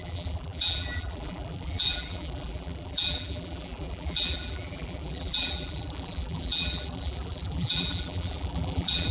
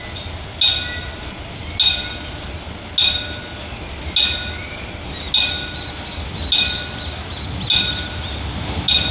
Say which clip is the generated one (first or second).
first